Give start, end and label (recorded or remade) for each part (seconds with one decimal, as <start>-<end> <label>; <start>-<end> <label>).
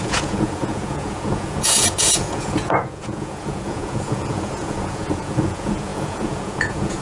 0.0-7.0 remade